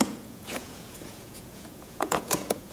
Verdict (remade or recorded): remade